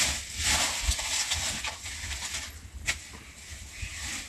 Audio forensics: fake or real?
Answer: real